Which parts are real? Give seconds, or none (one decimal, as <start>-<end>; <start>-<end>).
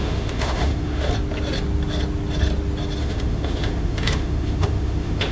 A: 1.1-3.0